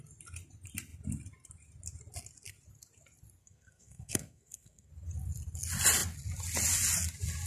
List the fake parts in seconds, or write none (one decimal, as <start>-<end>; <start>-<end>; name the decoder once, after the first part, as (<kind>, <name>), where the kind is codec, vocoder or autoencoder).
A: 3.4-4.9 (codec, SNAC)